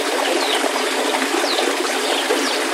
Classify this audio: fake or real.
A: real